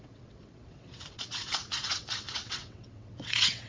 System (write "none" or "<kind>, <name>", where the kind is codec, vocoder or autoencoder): vocoder, WaveNeXt